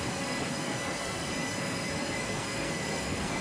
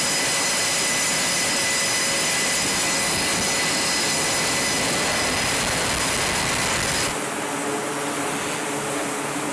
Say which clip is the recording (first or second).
second